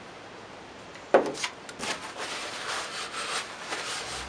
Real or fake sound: real